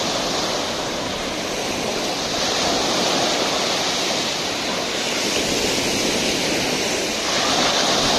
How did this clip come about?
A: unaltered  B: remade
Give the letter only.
A